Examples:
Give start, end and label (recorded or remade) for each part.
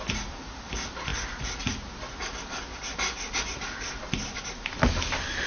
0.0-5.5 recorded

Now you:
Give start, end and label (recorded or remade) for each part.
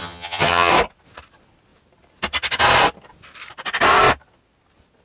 0.0-0.7 remade; 0.7-5.0 recorded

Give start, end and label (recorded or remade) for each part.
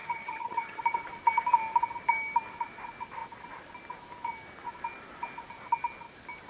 0.0-0.8 remade; 0.8-6.5 recorded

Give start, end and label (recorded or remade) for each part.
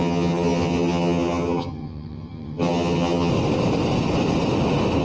0.0-3.3 remade; 3.3-5.0 recorded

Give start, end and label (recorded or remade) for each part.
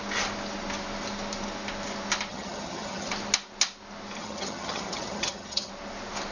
0.0-2.3 recorded; 2.3-3.1 remade; 3.1-4.2 recorded; 4.2-5.7 remade; 5.7-6.3 recorded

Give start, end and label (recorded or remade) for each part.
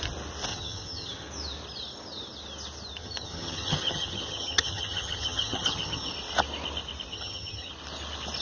0.0-0.5 recorded; 0.5-1.3 remade; 1.3-3.0 recorded; 3.0-6.1 remade; 6.1-7.1 recorded; 7.1-7.7 remade; 7.7-8.4 recorded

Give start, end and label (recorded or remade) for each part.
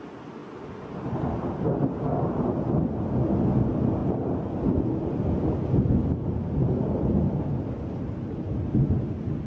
0.0-9.5 recorded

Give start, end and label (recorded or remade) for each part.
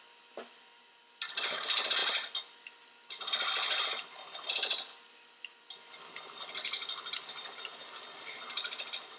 0.0-9.2 recorded